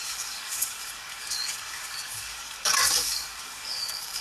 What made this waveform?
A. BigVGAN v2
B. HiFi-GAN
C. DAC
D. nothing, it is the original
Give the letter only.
C